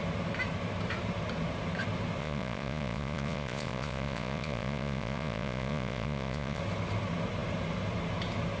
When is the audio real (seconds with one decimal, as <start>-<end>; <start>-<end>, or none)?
0.0-2.2; 6.6-8.6